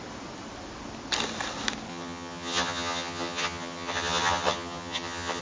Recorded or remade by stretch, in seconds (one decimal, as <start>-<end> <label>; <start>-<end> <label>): 0.0-1.9 recorded; 1.9-5.4 remade